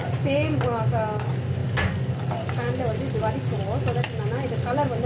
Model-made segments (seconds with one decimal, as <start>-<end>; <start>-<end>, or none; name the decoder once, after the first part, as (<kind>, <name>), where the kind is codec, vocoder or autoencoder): none